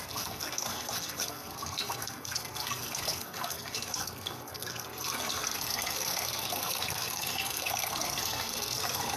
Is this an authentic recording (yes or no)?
no